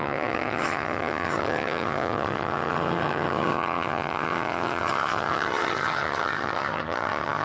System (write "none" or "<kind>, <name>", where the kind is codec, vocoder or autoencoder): vocoder, HiFi-GAN